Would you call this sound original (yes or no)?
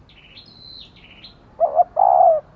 yes